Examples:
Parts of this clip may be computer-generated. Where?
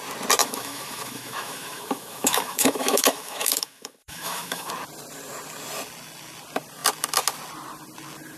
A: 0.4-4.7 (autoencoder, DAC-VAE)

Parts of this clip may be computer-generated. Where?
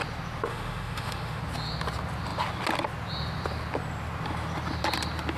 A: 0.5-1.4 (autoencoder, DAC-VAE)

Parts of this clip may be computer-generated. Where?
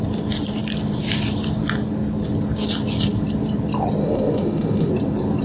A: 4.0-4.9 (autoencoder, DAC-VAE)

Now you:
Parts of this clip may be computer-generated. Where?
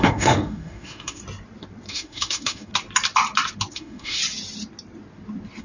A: 0.0-1.2 (autoencoder, DAC-VAE); 1.9-2.7; 3.7-4.2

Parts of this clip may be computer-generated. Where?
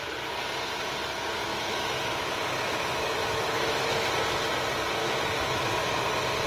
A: 1.5-4.1 (autoencoder, DAC-VAE); 5.0-5.7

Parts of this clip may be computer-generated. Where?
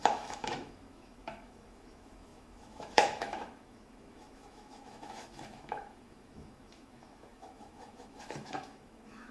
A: 0.0-9.3 (autoencoder, DAC-VAE)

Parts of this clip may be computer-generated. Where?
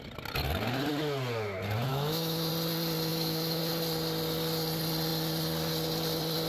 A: 1.9-2.5 (autoencoder, DAC-VAE); 3.1-3.6